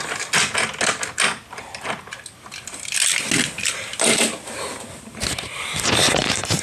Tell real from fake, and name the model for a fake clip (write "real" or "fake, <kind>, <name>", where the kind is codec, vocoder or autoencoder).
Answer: real